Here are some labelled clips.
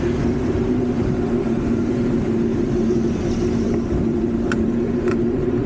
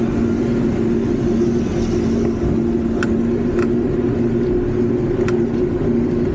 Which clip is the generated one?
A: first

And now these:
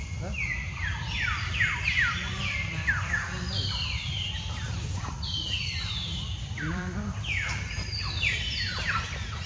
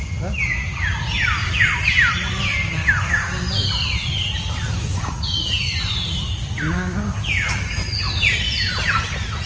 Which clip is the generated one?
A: first